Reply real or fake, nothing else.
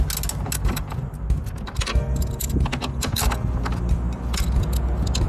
real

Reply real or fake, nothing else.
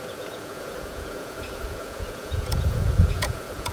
fake